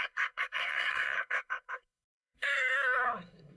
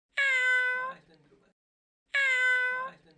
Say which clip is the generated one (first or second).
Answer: first